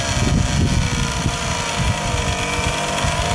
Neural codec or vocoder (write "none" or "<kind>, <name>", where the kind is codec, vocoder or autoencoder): none